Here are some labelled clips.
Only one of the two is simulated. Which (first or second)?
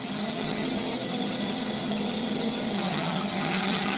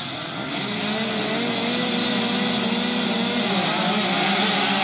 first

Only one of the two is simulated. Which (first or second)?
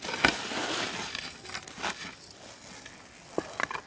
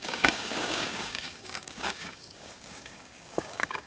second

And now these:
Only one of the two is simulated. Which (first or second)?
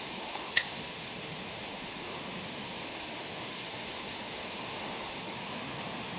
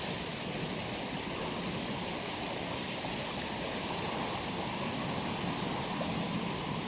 first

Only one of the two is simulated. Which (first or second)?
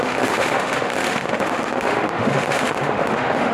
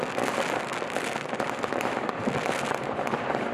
first